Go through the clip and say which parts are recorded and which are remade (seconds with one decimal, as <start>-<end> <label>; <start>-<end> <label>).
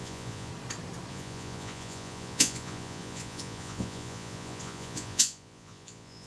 0.0-0.5 remade; 0.5-1.1 recorded; 1.1-6.3 remade